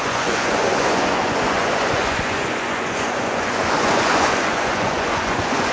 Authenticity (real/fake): fake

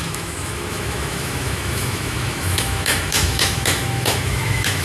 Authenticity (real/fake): fake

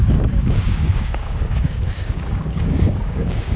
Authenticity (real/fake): fake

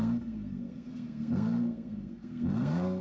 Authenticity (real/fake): fake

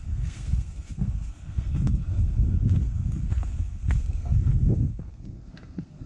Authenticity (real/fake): fake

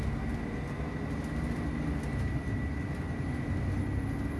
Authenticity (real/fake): real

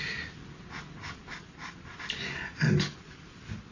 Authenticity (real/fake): real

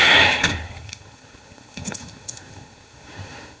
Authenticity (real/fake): fake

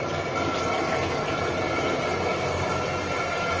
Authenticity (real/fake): real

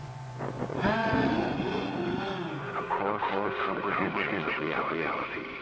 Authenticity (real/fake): fake